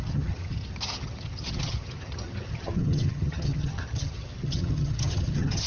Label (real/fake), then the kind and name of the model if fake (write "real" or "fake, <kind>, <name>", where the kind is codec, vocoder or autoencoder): fake, vocoder, HiFi-GAN